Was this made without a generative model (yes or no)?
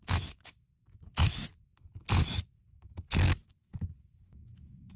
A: no